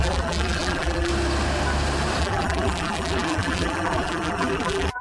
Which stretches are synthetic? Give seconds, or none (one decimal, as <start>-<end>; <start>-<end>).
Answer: 0.0-1.1; 2.2-5.0